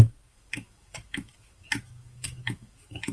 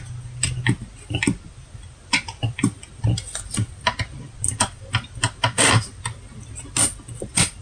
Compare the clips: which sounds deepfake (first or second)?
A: first